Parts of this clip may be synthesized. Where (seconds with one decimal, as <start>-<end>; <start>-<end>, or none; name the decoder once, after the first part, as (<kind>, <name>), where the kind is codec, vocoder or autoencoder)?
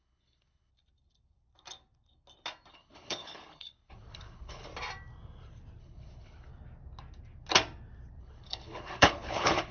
0.0-0.7 (codec, HILCodec); 2.7-4.7; 5.8-6.5; 8.2-9.7